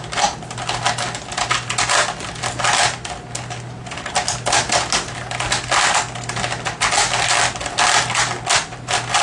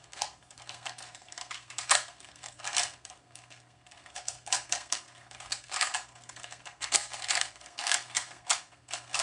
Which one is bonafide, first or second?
first